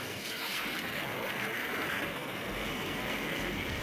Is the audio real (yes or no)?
no